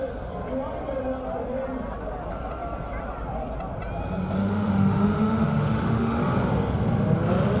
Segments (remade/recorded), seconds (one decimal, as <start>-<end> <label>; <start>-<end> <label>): 0.0-4.4 recorded; 4.4-6.2 remade; 6.2-7.6 recorded